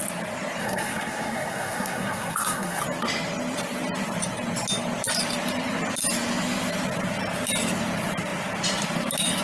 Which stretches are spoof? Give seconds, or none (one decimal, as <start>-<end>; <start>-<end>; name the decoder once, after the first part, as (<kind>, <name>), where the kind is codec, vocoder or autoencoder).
0.6-2.8 (codec, SNAC)